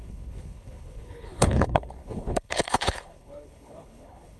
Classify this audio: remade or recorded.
remade